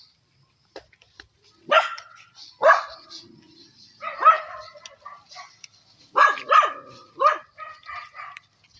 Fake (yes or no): no